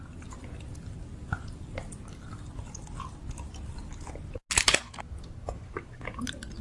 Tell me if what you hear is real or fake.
real